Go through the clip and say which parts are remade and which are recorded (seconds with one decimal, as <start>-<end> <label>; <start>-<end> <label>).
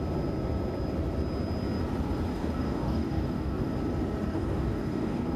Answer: 0.0-2.3 recorded; 2.3-3.7 remade; 3.7-4.3 recorded; 4.3-5.4 remade